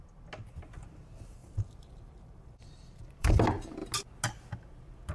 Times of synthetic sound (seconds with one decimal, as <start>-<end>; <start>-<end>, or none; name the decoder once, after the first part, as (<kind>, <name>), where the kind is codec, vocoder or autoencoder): 1.4-3.3 (vocoder, BigVGAN v2)